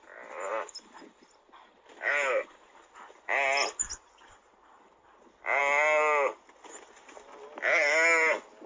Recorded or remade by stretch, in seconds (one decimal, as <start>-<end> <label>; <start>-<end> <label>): 0.0-8.7 recorded